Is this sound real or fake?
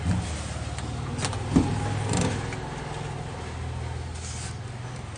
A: real